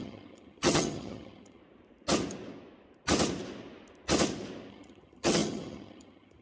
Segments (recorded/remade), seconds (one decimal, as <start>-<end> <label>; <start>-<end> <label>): 0.0-1.6 remade; 1.6-4.7 recorded; 4.7-6.4 remade

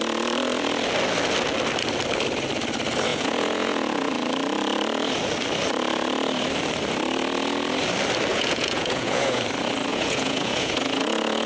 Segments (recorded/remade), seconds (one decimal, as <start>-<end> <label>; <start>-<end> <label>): 0.0-3.1 recorded; 3.1-4.1 remade; 4.1-8.3 recorded; 8.3-9.4 remade; 9.4-9.9 recorded; 9.9-11.5 remade

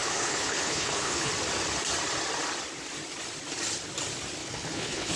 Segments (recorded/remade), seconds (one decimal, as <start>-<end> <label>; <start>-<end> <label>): 0.0-1.3 remade; 1.3-4.4 recorded; 4.4-5.2 remade

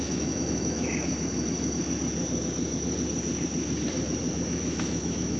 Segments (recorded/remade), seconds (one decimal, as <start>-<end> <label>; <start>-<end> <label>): 0.0-1.1 remade; 1.1-4.3 recorded; 4.3-5.4 remade

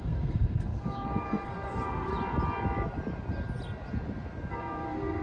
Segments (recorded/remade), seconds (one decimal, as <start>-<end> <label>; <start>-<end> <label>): 0.0-2.1 remade; 2.1-4.5 recorded; 4.5-5.2 remade

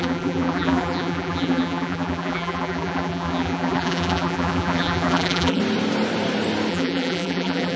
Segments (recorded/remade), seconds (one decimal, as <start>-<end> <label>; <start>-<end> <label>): 0.0-5.6 remade; 5.6-6.7 recorded; 6.7-7.8 remade

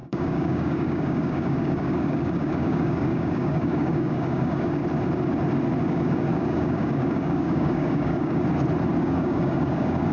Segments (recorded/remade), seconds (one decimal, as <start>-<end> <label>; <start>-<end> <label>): 0.0-4.8 remade; 4.8-5.8 recorded; 5.8-8.4 remade; 8.4-9.0 recorded; 9.0-10.1 remade